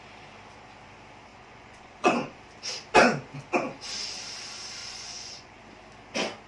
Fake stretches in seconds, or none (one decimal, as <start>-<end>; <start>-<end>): 1.3-2.4; 4.8-5.6